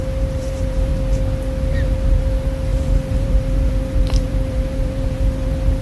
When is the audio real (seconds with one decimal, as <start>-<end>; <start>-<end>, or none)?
0.9-1.7